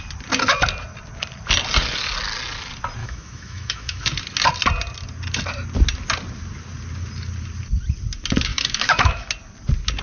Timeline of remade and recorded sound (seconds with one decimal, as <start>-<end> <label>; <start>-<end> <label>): 0.0-3.0 recorded; 3.0-4.0 remade; 4.0-8.5 recorded; 8.5-9.3 remade; 9.3-10.0 recorded